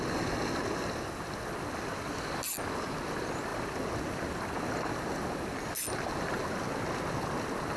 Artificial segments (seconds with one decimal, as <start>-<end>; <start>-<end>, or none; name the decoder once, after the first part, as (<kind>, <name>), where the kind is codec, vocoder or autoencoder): none